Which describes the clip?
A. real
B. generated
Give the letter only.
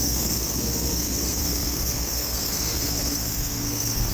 B